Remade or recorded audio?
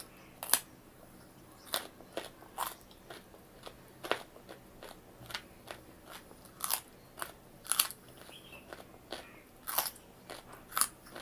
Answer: recorded